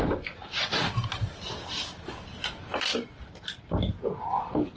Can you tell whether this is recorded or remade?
recorded